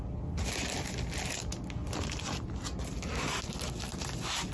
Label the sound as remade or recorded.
recorded